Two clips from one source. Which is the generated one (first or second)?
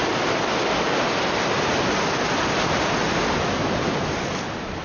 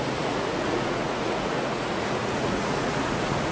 second